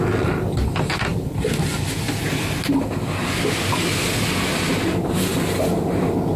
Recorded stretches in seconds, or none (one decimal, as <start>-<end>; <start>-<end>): 0.0-6.4